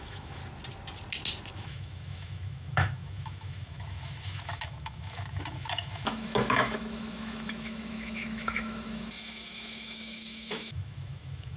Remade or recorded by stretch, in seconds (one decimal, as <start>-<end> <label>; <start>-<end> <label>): 0.0-0.4 remade; 0.4-1.5 recorded; 1.5-11.6 remade